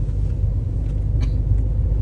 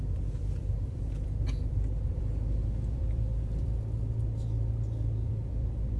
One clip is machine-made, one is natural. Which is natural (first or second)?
first